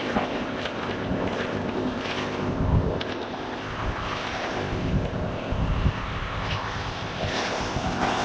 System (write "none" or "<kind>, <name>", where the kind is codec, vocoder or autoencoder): codec, ZipCodec